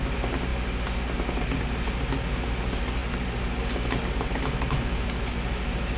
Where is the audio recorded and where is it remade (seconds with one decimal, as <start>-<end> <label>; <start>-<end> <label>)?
0.0-6.0 recorded